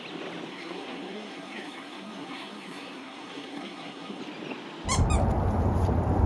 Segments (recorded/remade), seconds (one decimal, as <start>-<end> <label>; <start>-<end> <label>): 0.0-0.5 recorded; 0.5-4.2 remade; 4.2-6.3 recorded